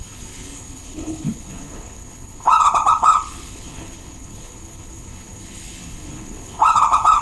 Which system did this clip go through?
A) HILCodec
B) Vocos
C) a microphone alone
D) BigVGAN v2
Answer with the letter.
A